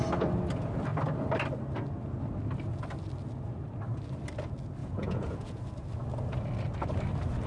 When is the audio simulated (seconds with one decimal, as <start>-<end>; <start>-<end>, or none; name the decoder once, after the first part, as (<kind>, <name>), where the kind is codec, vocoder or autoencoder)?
4.8-5.6 (vocoder, Vocos)